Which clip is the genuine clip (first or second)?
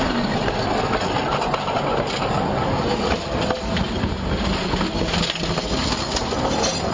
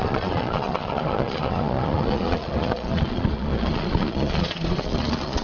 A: first